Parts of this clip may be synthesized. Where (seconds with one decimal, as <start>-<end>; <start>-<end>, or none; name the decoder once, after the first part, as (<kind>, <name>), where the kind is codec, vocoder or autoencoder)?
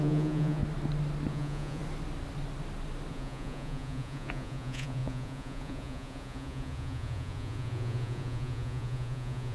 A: 0.0-0.6 (vocoder, Vocos); 1.3-1.8; 3.1-9.5